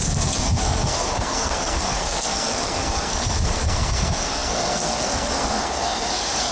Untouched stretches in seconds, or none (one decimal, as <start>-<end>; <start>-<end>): none